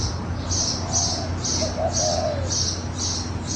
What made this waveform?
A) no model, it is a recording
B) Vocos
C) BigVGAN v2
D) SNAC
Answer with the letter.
A